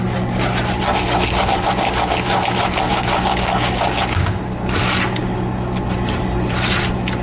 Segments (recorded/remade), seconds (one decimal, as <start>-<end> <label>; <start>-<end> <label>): 0.0-2.9 recorded; 2.9-4.4 remade; 4.4-7.2 recorded